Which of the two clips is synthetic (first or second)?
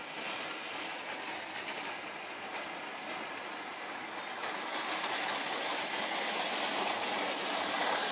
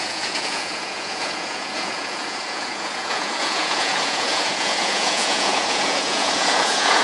second